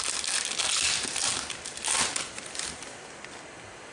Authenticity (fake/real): real